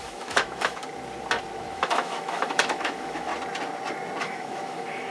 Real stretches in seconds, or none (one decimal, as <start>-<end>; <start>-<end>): 0.8-1.7; 3.3-4.2